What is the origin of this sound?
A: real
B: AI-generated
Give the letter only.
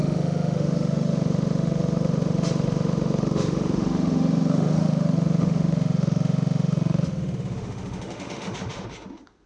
B